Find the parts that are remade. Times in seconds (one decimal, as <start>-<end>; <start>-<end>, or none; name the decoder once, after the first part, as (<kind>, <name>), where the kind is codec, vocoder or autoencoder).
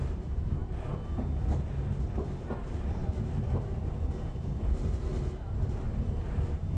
0.0-0.6 (vocoder, BigVGAN v2); 2.3-5.1; 5.7-6.8